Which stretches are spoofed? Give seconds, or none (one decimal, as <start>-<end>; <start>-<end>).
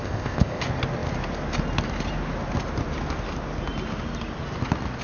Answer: 0.0-0.6